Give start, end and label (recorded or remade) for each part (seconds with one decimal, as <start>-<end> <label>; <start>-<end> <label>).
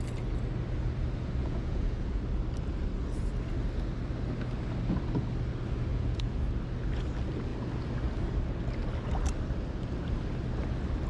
0.0-1.4 recorded; 1.4-2.2 remade; 2.2-5.9 recorded; 5.9-6.4 remade; 6.4-11.1 recorded